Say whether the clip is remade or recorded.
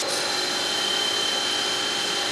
recorded